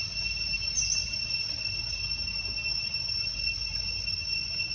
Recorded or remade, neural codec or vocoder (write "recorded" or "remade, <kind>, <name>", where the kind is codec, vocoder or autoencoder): recorded